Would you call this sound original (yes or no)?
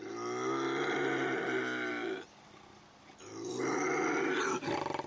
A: yes